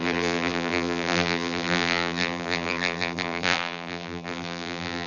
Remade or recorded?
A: remade